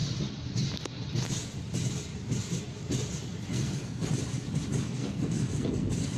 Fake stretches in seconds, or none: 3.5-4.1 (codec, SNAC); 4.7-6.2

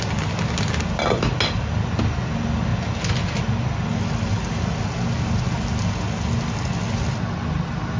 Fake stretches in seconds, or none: none

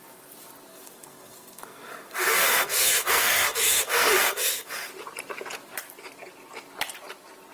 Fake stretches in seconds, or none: 0.7-4.9 (codec, SNAC)

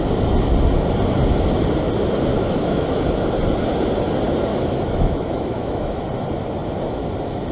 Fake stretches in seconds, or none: 2.3-3.0 (autoencoder, DAC-VAE); 4.5-6.0

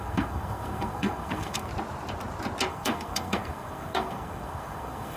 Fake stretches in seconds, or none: 0.0-1.7 (codec, SNAC); 2.7-5.2

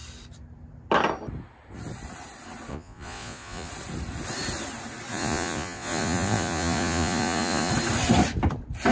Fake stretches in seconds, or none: 2.7-3.7 (vocoder, Vocos); 5.1-7.7

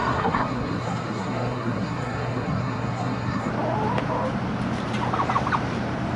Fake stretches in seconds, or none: 0.0-3.5 (codec, SNAC)